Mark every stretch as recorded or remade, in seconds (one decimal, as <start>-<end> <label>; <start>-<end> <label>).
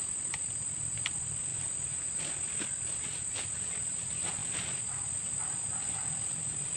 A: 0.0-1.5 recorded; 1.5-2.2 remade; 2.2-6.8 recorded